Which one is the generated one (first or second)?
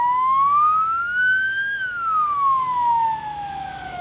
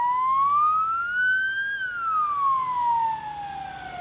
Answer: first